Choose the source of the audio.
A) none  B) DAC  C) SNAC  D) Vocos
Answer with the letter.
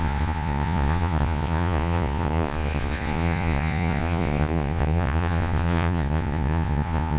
D